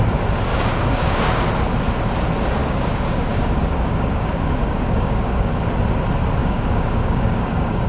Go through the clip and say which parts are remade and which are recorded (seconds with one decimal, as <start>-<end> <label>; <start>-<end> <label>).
0.0-0.5 recorded; 0.5-1.4 remade; 1.4-2.6 recorded; 2.6-5.5 remade; 5.5-6.4 recorded; 6.4-7.9 remade